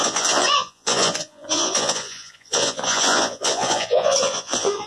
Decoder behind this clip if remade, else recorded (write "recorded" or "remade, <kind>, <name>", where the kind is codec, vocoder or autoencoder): remade, vocoder, Vocos